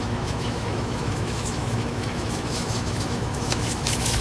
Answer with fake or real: fake